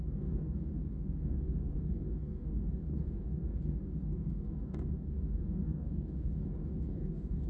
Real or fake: fake